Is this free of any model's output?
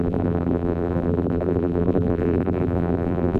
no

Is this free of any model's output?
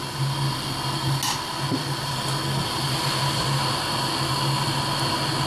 yes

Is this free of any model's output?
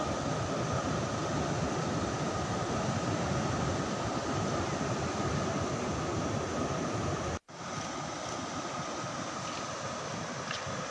yes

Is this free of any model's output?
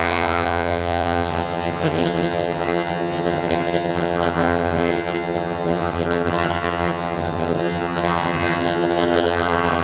no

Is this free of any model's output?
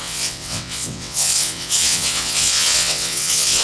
no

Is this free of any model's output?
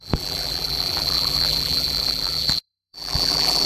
no